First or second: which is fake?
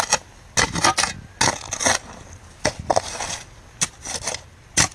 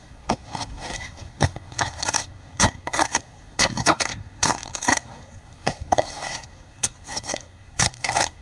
second